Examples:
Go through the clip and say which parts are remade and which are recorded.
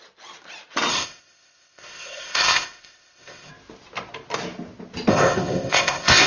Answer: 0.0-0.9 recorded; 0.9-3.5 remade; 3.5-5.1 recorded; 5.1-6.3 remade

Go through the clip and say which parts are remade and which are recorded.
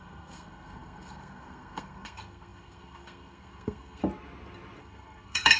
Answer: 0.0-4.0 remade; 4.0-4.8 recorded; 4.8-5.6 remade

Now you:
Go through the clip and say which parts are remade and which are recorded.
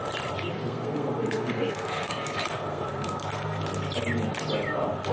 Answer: 0.0-0.5 recorded; 0.5-3.6 remade; 3.6-5.1 recorded